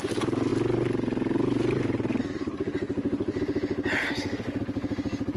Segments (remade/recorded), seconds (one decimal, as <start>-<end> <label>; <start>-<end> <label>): 0.0-4.0 recorded; 4.0-4.6 remade; 4.6-5.4 recorded